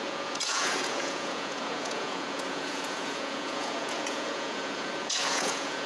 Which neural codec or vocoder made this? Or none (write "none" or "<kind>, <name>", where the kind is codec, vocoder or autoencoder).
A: vocoder, Vocos